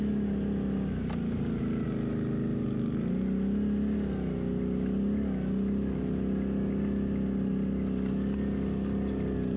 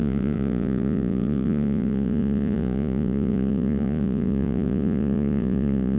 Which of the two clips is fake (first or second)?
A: second